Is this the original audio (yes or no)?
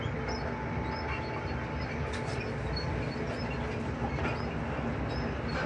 yes